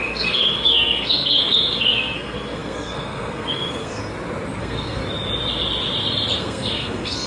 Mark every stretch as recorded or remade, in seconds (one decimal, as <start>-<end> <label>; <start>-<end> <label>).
0.0-4.0 remade; 4.0-4.6 recorded; 4.6-5.0 remade; 5.0-6.4 recorded; 6.4-7.3 remade